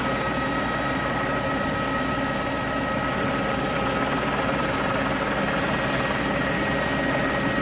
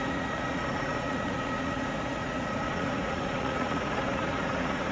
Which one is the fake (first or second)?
second